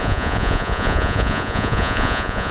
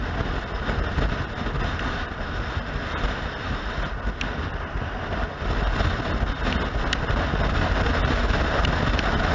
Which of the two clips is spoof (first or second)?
first